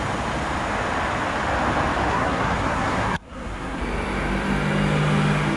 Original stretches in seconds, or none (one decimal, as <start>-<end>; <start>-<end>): 0.0-2.1; 3.8-5.6